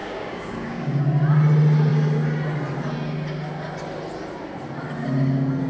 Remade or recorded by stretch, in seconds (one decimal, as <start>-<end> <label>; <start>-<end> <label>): 0.0-1.0 remade; 1.0-5.7 recorded